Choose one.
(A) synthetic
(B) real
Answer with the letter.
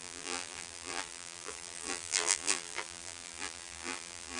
A